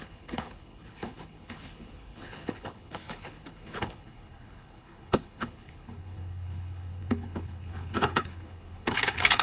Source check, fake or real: fake